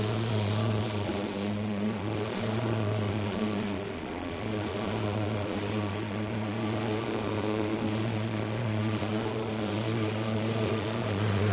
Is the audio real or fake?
fake